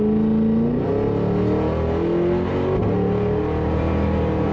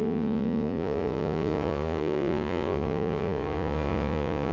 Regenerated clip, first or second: second